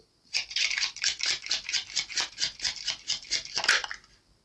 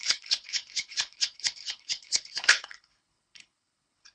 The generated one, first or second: second